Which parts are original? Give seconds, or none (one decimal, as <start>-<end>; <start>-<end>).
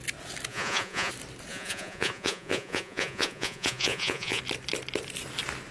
0.0-0.5; 1.1-1.5; 4.4-5.7